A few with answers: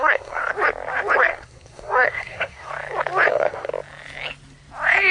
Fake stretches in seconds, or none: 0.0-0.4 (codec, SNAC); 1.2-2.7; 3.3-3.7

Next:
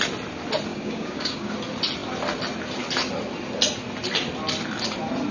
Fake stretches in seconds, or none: 0.7-1.5 (codec, DAC)

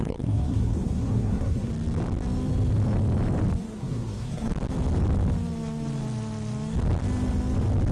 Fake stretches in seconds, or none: 0.0-1.7 (codec, SNAC); 3.6-4.5

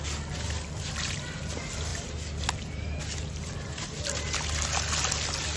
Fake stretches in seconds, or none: none